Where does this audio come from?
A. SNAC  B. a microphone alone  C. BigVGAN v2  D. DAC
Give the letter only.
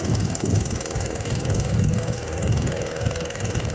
D